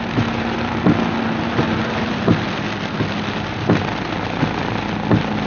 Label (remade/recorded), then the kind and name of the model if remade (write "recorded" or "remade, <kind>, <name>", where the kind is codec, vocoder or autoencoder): recorded